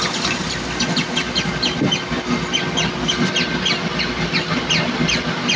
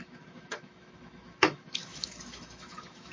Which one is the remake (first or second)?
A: second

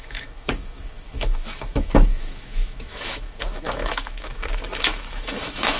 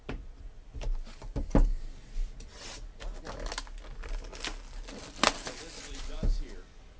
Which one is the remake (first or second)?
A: first